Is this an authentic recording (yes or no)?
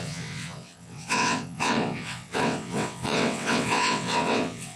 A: no